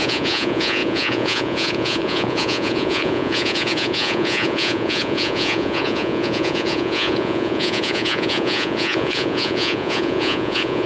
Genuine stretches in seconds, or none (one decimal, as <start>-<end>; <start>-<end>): none